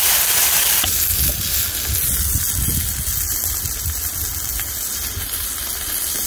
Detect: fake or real real